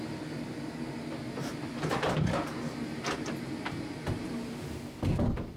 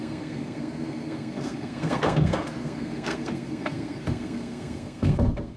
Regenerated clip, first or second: second